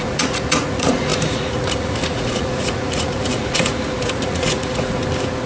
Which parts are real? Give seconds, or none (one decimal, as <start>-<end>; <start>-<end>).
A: 5.0-5.5